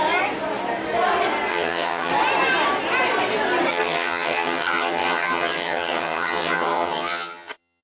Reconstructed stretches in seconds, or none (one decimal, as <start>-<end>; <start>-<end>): 1.5-2.1; 3.7-7.8